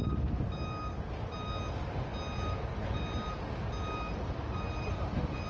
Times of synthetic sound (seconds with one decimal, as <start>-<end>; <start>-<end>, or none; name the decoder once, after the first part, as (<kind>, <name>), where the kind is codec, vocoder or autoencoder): none